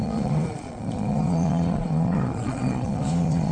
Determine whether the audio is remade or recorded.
remade